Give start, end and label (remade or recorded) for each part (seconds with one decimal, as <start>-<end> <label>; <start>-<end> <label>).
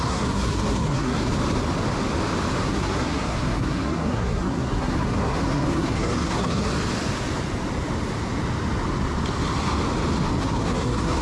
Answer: 0.0-1.3 remade; 1.3-2.6 recorded; 2.6-6.7 remade; 6.7-10.4 recorded; 10.4-11.2 remade